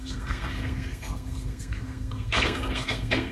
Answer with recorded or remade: remade